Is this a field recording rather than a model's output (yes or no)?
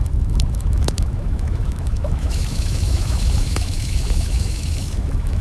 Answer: no